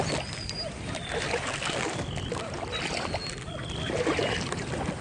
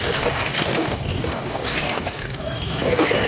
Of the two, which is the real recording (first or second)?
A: first